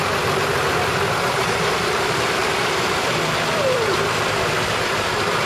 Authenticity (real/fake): fake